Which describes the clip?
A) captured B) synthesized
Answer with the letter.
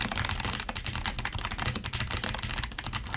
A